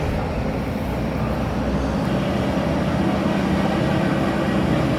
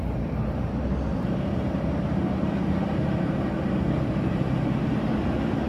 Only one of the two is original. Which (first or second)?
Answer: first